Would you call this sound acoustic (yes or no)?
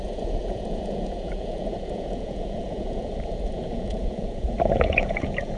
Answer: no